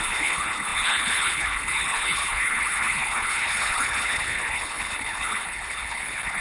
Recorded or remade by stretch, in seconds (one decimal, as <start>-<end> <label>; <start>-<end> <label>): 0.0-6.4 remade